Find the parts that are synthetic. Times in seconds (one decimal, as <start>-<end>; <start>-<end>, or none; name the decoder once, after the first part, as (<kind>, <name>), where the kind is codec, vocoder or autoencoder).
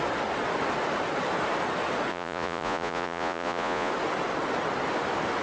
2.1-3.9 (vocoder, Vocos)